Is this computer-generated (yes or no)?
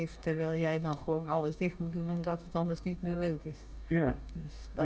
yes